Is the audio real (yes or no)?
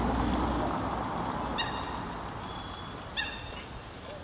yes